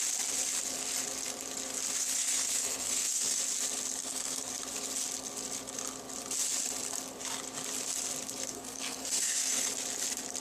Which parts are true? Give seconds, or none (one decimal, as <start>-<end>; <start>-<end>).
0.0-2.0; 3.4-4.0; 4.5-8.5; 9.7-10.4